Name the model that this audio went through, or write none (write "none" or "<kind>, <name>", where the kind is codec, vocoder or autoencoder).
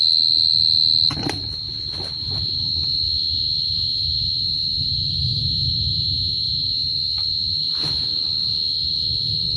none